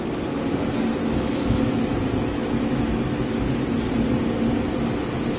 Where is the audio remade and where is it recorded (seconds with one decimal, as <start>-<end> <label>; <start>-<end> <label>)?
0.0-1.0 recorded; 1.0-3.3 remade; 3.3-5.4 recorded